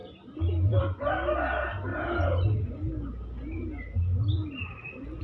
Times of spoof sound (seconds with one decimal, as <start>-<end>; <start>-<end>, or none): none